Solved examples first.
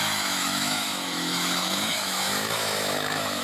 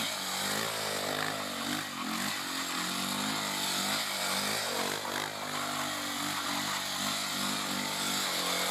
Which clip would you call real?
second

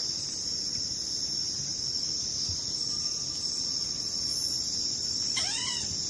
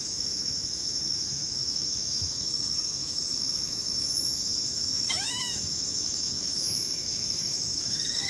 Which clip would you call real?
first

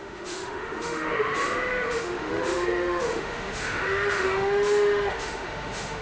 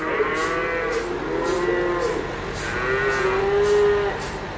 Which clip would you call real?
second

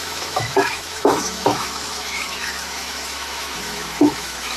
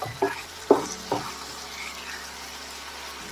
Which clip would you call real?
second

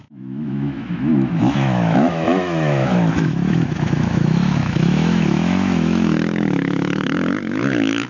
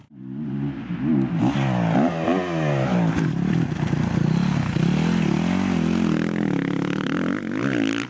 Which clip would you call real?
second